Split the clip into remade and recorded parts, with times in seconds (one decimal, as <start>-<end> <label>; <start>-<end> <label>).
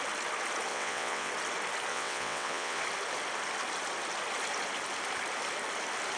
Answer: 0.0-0.7 recorded; 0.7-1.3 remade; 1.3-1.9 recorded; 1.9-2.8 remade; 2.8-6.2 recorded